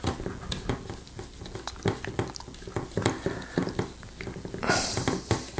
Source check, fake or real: real